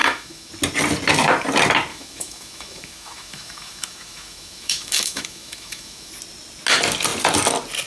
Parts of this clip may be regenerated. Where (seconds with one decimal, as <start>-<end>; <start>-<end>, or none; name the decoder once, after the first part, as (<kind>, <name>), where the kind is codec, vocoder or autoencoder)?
0.0-0.5 (autoencoder, DAC-VAE); 1.9-6.1